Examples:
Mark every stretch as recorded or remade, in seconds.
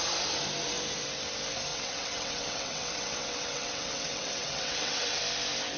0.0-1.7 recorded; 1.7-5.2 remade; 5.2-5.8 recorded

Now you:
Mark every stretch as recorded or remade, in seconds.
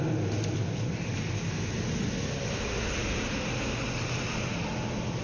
0.0-5.2 recorded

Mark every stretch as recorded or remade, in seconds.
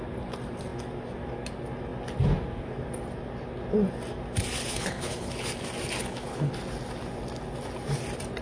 0.0-4.6 recorded; 4.6-5.5 remade; 5.5-6.0 recorded; 6.0-6.5 remade; 6.5-8.4 recorded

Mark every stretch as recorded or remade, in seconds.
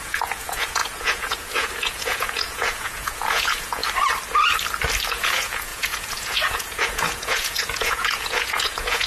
0.0-3.8 remade; 3.8-5.1 recorded; 5.1-9.1 remade